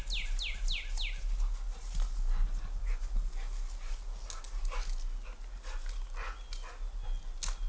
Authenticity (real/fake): real